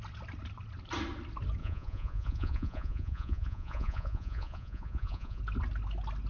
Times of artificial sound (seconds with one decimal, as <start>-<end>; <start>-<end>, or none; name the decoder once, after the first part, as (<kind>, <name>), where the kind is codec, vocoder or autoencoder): 1.6-5.4 (vocoder, Vocos)